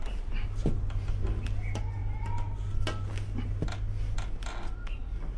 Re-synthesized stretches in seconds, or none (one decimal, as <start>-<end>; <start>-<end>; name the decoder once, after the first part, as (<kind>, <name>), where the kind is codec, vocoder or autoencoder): none